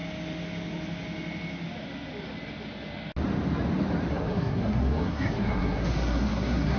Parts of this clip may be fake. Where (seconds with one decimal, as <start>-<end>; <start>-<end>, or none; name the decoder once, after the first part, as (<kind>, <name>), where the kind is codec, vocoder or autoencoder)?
4.1-6.8 (codec, SNAC)